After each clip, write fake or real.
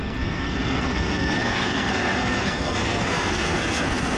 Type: fake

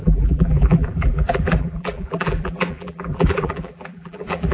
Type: fake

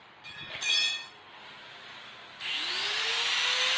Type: real